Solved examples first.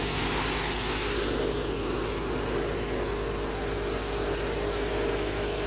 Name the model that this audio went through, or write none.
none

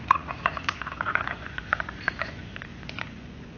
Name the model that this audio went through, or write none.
vocoder, Vocos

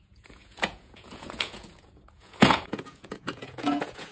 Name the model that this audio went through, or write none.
vocoder, Vocos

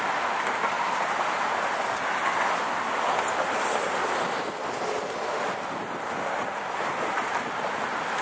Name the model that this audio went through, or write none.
none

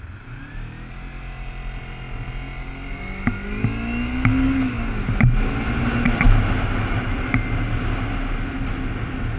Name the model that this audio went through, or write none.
none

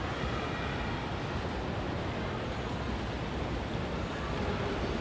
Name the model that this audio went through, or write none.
none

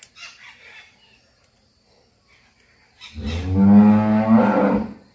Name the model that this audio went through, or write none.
none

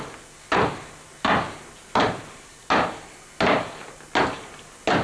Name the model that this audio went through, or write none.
none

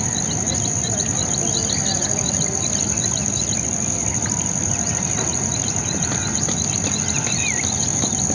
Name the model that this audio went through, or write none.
none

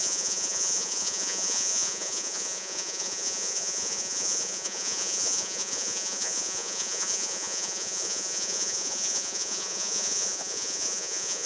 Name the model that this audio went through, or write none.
vocoder, Vocos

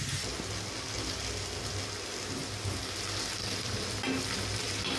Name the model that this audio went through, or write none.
none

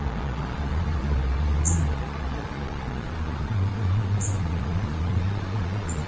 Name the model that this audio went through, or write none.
vocoder, Vocos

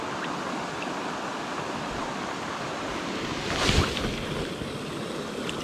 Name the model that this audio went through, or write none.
none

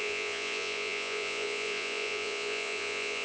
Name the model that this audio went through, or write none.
vocoder, Vocos